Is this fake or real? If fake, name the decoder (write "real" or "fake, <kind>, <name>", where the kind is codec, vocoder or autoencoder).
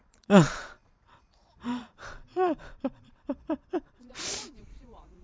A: fake, vocoder, Vocos